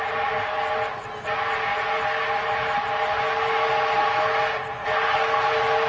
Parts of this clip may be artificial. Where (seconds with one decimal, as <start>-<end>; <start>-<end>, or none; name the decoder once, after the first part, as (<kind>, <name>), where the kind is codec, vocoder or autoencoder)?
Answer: none